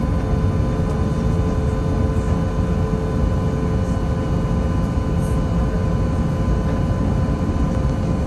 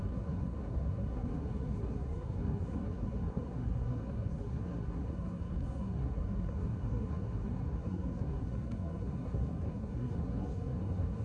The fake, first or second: second